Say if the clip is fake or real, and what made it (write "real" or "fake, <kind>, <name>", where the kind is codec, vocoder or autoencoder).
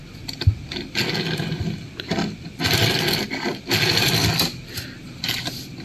real